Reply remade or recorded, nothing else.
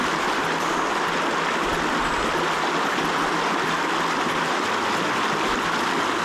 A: recorded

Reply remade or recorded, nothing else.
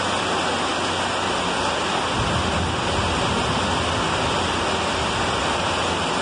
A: recorded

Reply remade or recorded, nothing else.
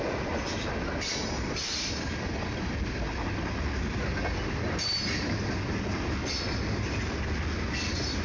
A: recorded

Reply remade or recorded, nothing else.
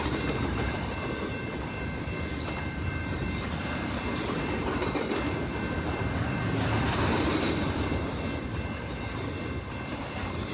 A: remade